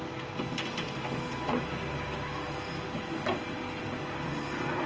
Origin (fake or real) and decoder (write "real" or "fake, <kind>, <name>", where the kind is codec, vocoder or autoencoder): real